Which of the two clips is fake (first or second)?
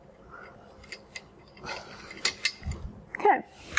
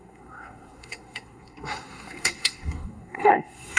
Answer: second